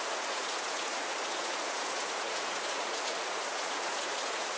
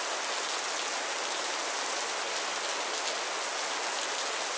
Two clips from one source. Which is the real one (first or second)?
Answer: second